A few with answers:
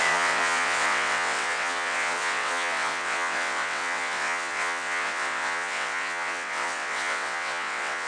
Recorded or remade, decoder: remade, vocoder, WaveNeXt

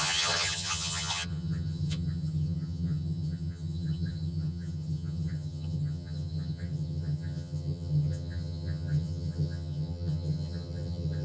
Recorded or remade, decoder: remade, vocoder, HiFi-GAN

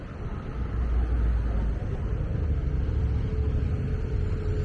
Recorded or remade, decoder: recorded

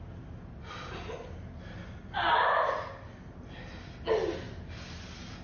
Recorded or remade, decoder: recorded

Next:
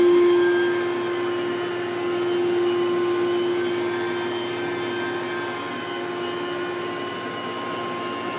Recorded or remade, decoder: recorded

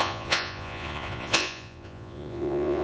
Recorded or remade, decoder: remade, vocoder, Vocos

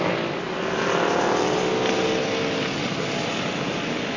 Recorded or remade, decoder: recorded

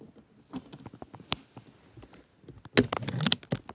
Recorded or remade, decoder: recorded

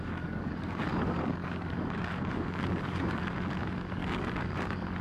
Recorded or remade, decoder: remade, codec, DAC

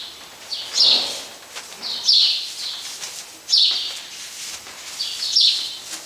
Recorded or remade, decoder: recorded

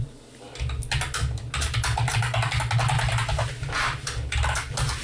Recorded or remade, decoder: recorded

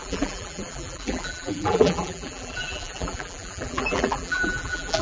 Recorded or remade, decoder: remade, vocoder, BigVGAN v2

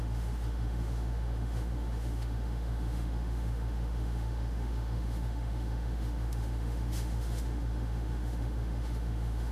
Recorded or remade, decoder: remade, autoencoder, DAC-VAE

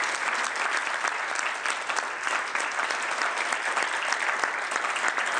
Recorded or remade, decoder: recorded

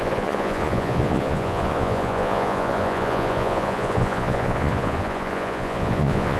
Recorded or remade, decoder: remade, vocoder, Vocos